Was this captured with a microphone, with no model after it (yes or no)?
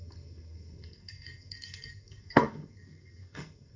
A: no